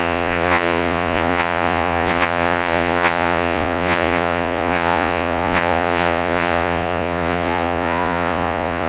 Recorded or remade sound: remade